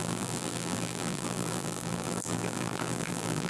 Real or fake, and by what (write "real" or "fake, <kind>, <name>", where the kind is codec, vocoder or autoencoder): fake, vocoder, BigVGAN v2